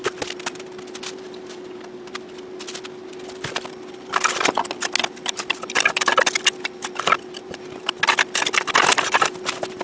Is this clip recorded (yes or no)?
yes